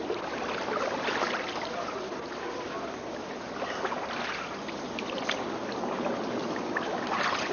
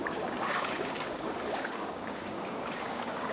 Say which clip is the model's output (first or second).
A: second